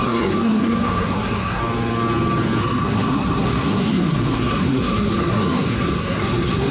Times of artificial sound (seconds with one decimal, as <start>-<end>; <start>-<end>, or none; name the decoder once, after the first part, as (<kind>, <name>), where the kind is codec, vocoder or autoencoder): 0.0-1.6 (codec, SNAC); 2.6-6.7